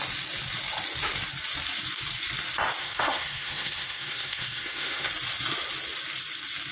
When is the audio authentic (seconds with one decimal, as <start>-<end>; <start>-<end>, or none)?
0.0-2.8; 5.1-6.7